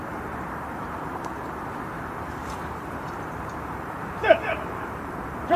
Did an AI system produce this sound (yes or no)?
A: yes